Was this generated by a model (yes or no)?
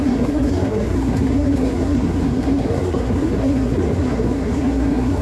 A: yes